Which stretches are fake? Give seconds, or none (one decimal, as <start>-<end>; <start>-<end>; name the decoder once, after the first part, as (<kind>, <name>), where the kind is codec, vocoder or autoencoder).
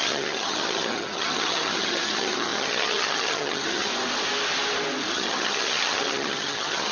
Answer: 0.0-3.9 (vocoder, HiFi-GAN); 5.1-6.9